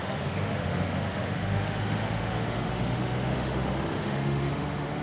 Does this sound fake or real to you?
fake